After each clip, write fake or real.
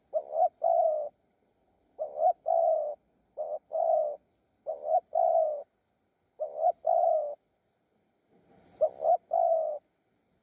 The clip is real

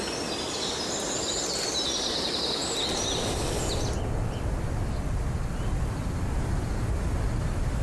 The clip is real